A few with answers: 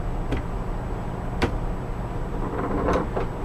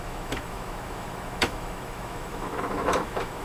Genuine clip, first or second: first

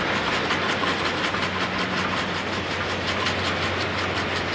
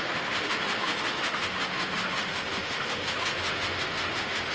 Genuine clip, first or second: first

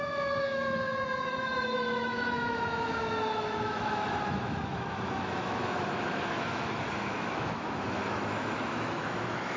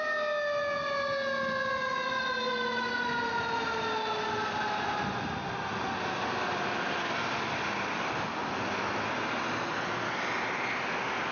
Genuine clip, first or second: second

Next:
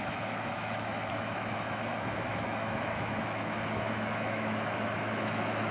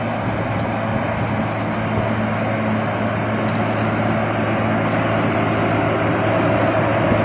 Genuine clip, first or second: second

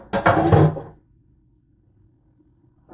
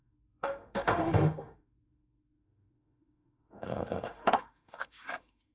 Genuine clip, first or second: first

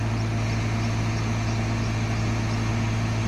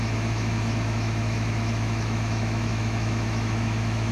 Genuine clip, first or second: first